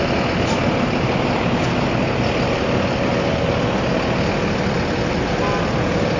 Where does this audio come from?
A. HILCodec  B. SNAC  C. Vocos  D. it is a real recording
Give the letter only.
D